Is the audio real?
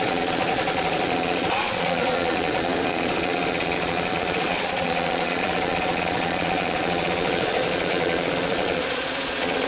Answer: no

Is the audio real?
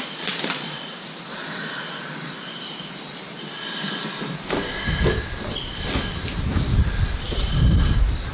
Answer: yes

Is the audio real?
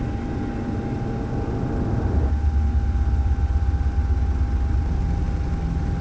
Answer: yes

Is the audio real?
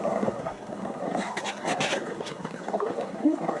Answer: no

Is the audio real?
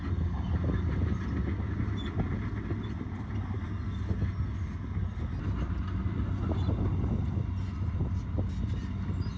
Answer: yes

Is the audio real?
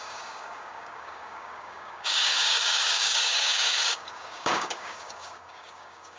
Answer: no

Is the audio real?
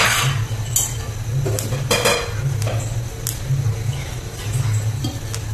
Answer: yes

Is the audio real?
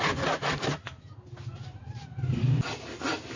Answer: yes